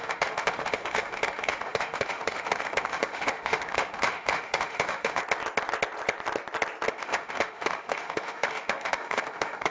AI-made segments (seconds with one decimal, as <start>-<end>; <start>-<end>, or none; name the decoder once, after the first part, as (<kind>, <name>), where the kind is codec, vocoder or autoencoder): 0.0-5.2 (autoencoder, DAC-VAE); 6.9-9.7